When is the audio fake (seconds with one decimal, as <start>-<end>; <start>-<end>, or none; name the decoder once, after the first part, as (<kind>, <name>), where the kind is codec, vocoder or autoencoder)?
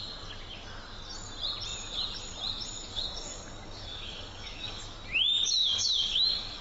2.9-4.8 (codec, DAC); 5.6-6.6